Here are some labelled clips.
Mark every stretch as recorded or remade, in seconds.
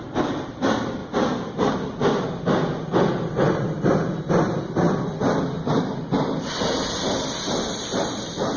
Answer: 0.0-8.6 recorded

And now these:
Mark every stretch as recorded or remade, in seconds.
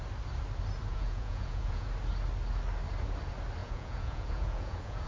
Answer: 0.0-0.9 recorded; 0.9-1.9 remade; 1.9-3.6 recorded; 3.6-5.1 remade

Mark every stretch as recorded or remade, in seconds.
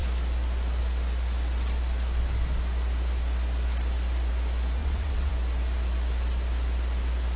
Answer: 0.0-4.8 recorded; 4.8-5.3 remade; 5.3-7.4 recorded